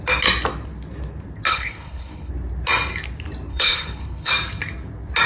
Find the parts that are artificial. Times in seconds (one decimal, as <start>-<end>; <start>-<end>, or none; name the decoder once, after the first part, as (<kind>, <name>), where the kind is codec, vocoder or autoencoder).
1.5-2.3 (codec, HILCodec); 3.5-4.3